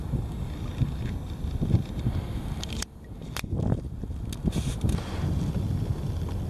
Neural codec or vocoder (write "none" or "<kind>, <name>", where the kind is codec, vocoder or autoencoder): none